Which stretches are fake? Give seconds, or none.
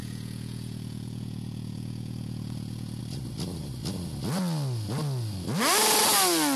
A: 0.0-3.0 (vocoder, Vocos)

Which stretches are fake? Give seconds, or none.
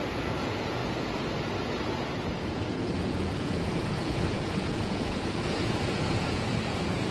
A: 0.0-0.8 (vocoder, Vocos); 2.3-7.1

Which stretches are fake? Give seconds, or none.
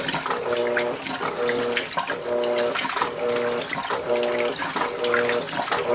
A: none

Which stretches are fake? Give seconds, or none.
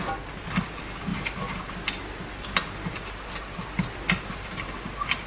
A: none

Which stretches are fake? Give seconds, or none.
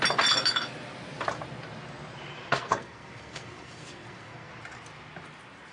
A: 2.5-4.5 (codec, SNAC)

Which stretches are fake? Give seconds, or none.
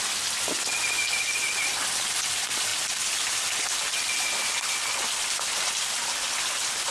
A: none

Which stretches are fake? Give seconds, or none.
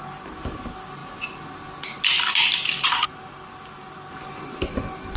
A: none